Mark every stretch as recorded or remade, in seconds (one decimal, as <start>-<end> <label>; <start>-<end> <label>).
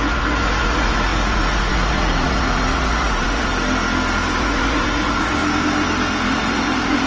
0.0-3.5 remade; 3.5-4.4 recorded; 4.4-5.4 remade; 5.4-6.3 recorded; 6.3-7.1 remade